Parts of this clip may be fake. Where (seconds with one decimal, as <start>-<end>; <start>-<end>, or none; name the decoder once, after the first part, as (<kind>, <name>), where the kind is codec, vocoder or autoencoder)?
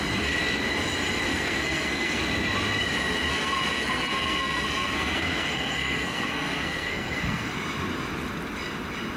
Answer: 1.3-2.2 (codec, SNAC); 3.3-7.5